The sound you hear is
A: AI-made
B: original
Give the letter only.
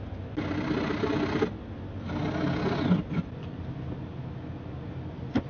B